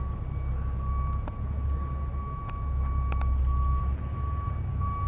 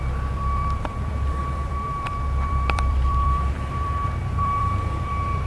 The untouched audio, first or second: first